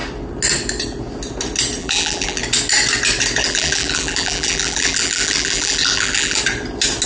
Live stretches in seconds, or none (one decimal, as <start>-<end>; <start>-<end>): 0.0-1.8; 2.4-3.4; 6.4-7.1